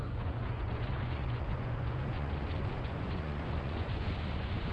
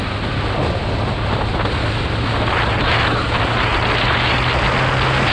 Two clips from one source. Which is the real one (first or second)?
second